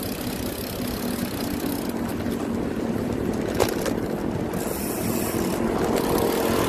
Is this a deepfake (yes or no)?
no